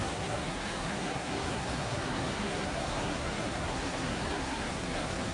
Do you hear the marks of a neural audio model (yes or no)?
yes